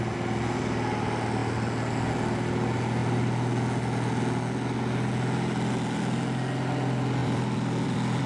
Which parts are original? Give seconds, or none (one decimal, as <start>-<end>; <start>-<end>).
0.0-7.2